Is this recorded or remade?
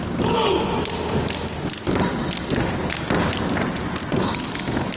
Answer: recorded